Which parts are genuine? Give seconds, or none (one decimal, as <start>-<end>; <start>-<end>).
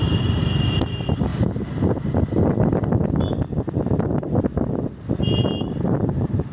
1.3-5.2